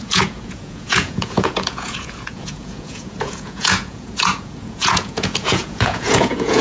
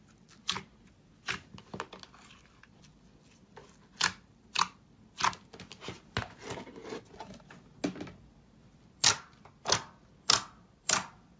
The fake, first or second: first